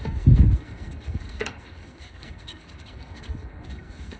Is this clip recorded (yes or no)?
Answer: no